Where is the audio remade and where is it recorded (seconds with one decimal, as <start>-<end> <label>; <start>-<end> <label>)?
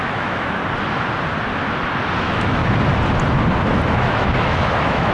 0.0-0.6 remade; 0.6-2.2 recorded; 2.2-2.6 remade; 2.6-3.9 recorded; 3.9-5.1 remade